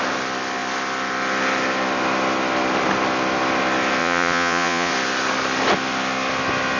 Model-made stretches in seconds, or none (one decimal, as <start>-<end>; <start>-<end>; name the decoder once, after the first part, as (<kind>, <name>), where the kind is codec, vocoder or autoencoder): 4.0-4.9 (vocoder, Vocos)